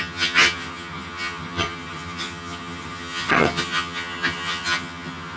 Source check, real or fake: fake